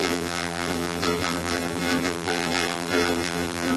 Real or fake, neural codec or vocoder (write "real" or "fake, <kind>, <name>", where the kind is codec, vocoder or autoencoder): fake, vocoder, BigVGAN v2